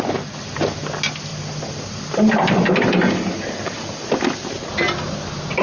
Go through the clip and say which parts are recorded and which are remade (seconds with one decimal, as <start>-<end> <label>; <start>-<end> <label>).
0.0-5.6 recorded